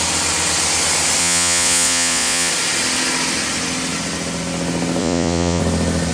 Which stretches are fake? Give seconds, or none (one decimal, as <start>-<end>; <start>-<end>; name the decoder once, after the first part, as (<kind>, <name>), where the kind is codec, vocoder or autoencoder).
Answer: 1.2-2.5 (vocoder, Vocos); 5.0-5.6